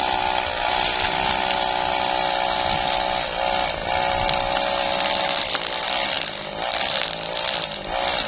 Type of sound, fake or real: real